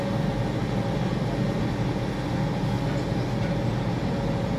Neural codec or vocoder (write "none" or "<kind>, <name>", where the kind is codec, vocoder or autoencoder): none